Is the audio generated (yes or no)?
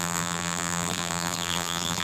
yes